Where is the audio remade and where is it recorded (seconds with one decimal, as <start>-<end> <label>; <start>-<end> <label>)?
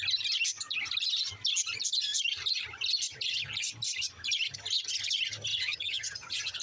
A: 0.0-5.5 recorded; 5.5-6.6 remade